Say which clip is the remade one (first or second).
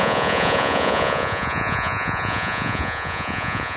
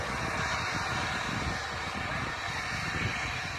first